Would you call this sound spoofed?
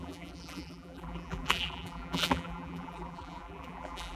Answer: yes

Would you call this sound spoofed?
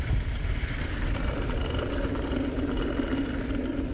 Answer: no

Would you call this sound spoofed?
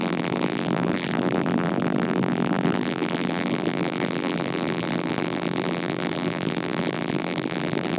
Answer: yes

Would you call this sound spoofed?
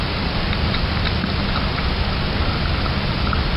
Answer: no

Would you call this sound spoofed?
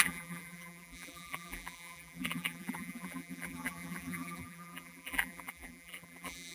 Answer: yes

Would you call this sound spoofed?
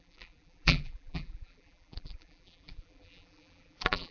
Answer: yes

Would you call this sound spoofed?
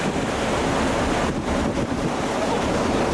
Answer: yes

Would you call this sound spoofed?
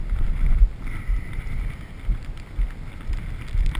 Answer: no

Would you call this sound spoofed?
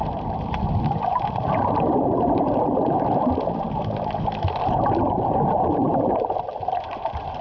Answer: yes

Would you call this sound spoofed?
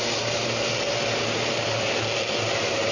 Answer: no